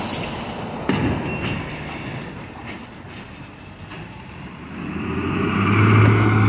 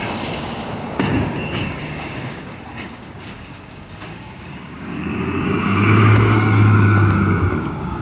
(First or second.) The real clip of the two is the first